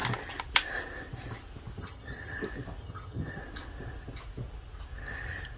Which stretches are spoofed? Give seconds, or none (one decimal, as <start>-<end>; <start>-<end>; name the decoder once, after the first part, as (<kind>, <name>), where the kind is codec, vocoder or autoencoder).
1.8-2.4 (vocoder, HiFi-GAN); 2.8-3.4